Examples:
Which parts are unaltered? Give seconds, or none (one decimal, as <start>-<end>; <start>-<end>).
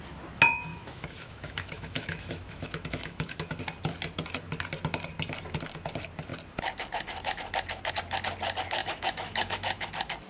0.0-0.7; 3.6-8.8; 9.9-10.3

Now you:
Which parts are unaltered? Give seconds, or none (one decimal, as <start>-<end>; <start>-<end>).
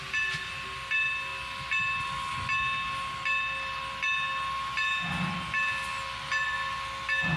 0.0-7.4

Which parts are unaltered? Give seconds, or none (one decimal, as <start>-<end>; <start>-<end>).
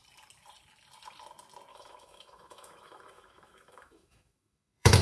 0.0-1.7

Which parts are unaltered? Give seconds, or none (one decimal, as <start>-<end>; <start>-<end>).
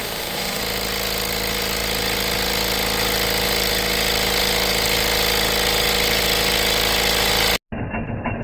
0.6-8.4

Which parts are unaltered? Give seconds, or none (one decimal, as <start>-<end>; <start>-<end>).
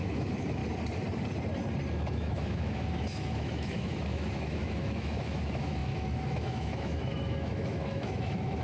0.6-1.9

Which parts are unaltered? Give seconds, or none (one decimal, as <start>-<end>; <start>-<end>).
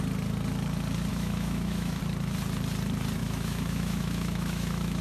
0.0-1.1; 2.0-3.2